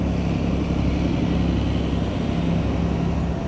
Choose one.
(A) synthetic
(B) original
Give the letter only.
B